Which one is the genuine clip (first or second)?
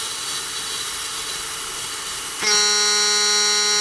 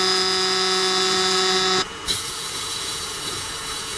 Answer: first